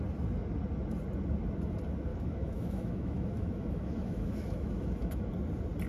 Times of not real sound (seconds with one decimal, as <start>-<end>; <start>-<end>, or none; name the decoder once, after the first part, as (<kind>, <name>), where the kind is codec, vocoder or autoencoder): 2.1-5.3 (autoencoder, DAC-VAE)